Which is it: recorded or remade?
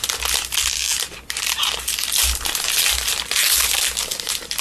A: recorded